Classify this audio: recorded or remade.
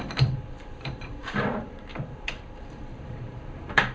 remade